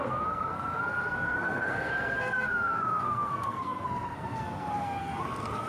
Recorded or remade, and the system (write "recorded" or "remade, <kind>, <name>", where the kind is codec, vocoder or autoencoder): remade, codec, SNAC